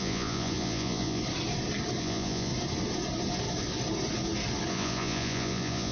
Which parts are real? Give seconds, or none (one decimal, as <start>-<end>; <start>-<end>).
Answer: 1.2-2.0; 2.5-4.7